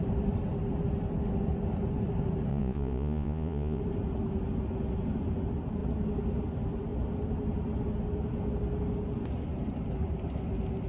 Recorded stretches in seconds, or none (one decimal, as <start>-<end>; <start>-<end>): 0.0-2.5; 3.8-10.9